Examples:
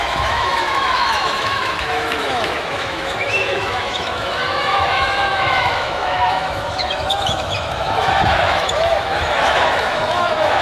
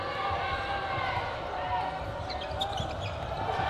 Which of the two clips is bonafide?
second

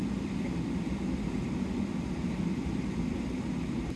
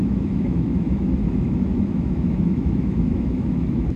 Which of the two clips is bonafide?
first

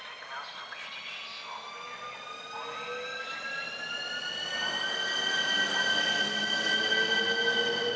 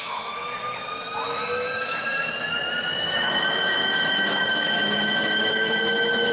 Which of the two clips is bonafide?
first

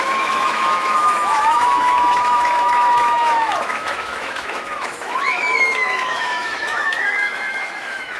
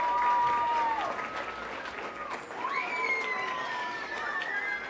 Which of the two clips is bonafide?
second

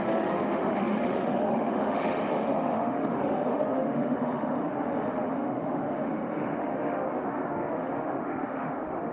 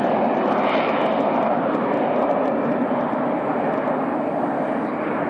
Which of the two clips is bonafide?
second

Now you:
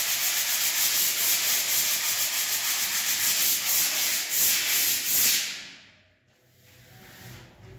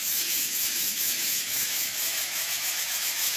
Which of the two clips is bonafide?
first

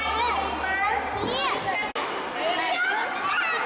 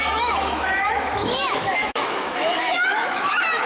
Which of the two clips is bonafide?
first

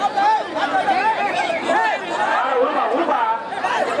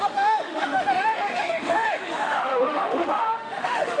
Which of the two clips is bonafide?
first